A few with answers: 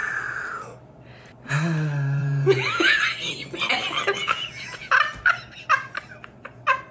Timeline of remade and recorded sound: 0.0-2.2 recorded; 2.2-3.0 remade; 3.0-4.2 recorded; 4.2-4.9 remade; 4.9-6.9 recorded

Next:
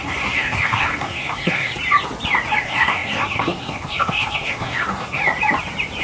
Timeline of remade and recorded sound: 0.0-1.7 remade; 1.7-2.6 recorded; 2.6-5.2 remade; 5.2-6.0 recorded

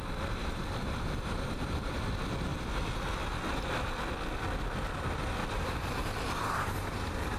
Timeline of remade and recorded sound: 0.0-0.4 recorded; 0.4-2.0 remade; 2.0-5.4 recorded; 5.4-7.4 remade

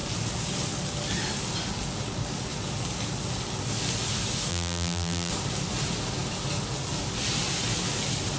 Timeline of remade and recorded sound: 0.0-4.5 recorded; 4.5-5.3 remade; 5.3-8.4 recorded